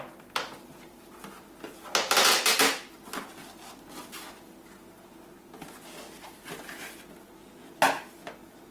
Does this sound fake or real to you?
real